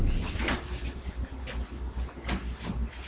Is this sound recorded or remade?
recorded